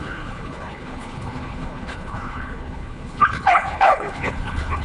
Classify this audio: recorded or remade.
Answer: remade